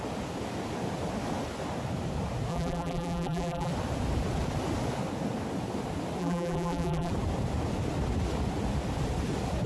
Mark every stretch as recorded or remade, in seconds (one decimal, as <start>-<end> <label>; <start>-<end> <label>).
0.0-2.5 recorded; 2.5-3.7 remade; 3.7-6.2 recorded; 6.2-7.1 remade; 7.1-9.7 recorded